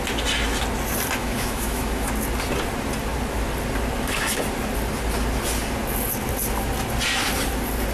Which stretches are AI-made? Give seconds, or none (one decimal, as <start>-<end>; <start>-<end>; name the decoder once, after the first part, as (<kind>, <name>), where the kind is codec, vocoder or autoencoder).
1.2-2.1 (autoencoder, DAC-VAE)